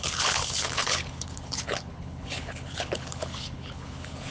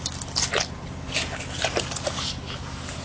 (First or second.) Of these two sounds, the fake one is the first